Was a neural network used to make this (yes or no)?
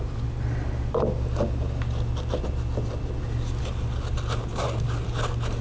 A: no